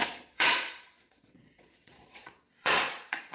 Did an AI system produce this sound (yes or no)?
yes